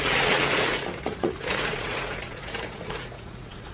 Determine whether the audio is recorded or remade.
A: remade